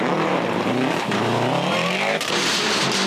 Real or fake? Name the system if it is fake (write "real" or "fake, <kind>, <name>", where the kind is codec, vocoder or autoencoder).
fake, vocoder, BigVGAN v2